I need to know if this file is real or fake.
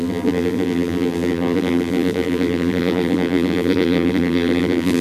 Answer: fake